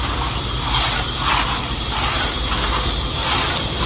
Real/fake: fake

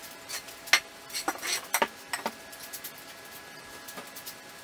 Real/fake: real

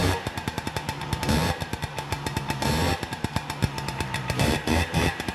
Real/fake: fake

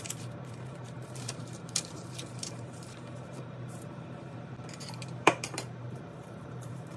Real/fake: fake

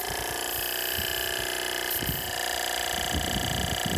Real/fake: fake